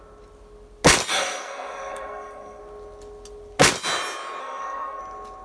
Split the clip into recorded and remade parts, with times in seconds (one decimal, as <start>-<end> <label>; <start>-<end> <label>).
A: 0.0-1.1 recorded; 1.1-2.6 remade; 2.6-4.4 recorded; 4.4-5.0 remade; 5.0-5.4 recorded